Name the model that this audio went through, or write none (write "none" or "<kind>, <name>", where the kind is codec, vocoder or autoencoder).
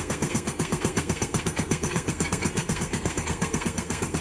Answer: codec, SNAC